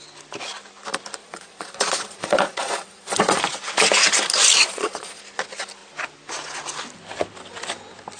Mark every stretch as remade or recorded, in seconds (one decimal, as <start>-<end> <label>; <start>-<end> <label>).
0.0-1.2 recorded; 1.2-3.4 remade; 3.4-4.6 recorded; 4.6-5.2 remade; 5.2-8.2 recorded